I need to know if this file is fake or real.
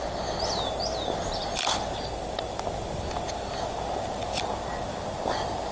real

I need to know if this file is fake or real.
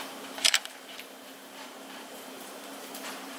fake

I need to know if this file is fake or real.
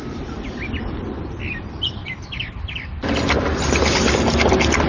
fake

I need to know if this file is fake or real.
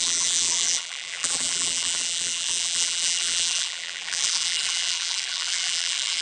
fake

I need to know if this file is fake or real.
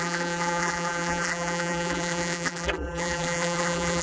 fake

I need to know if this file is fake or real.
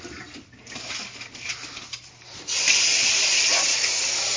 fake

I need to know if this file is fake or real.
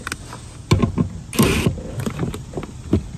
real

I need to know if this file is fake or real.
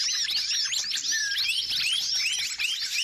real